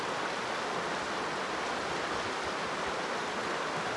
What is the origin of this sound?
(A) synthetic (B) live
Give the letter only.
B